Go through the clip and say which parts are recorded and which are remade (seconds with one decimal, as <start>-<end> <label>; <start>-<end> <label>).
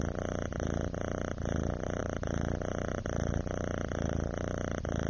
0.0-5.1 recorded